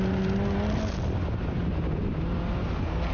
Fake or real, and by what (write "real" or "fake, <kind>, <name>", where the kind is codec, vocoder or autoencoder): real